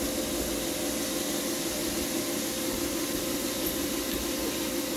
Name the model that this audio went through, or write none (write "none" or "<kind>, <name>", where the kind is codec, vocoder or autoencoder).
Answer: none